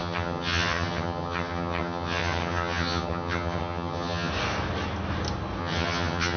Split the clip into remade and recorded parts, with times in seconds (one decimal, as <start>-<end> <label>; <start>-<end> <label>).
0.0-4.3 remade; 4.3-5.6 recorded; 5.6-6.4 remade